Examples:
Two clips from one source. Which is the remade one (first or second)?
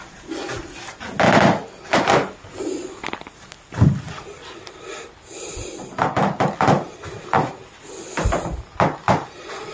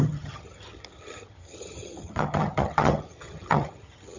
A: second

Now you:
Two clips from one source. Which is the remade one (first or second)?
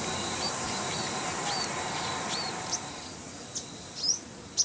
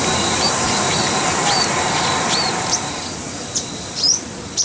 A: second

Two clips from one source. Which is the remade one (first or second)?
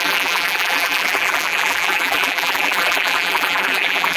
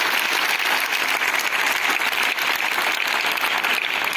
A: first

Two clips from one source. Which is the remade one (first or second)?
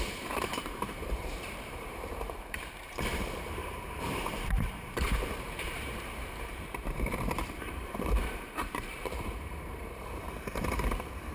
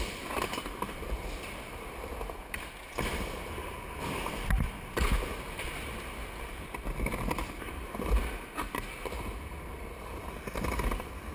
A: first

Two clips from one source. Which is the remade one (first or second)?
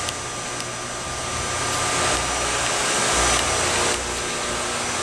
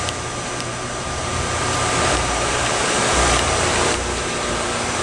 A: second